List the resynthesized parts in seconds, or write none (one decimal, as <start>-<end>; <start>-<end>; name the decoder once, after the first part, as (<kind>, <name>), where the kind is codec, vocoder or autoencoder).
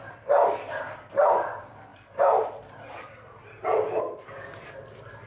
none